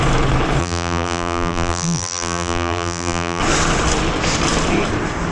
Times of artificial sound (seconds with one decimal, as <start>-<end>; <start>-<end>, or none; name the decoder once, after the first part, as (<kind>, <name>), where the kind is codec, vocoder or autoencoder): 0.6-3.4 (vocoder, BigVGAN v2)